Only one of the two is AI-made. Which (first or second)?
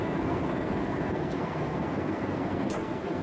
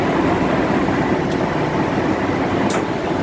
first